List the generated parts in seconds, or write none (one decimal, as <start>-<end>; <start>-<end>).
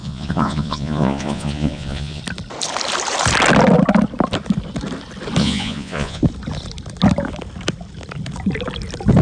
0.0-2.2; 5.4-6.2